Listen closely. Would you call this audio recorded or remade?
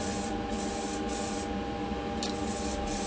recorded